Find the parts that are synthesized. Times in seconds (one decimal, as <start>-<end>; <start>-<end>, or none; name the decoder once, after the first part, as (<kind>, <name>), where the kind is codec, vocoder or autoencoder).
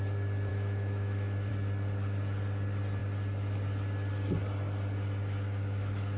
0.5-1.5 (autoencoder, DAC-VAE)